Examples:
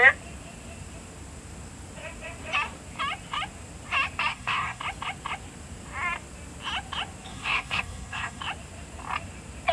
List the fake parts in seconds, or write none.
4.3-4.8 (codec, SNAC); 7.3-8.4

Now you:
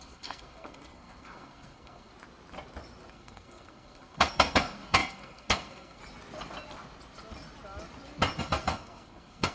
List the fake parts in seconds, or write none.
0.0-2.1 (codec, SNAC); 3.1-6.0; 8.4-9.5

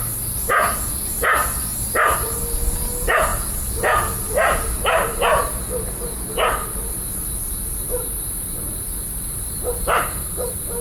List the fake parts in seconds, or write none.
none

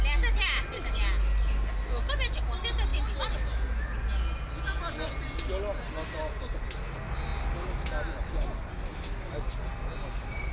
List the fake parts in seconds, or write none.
none